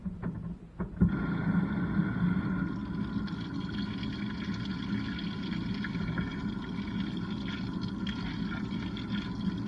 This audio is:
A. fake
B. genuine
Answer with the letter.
B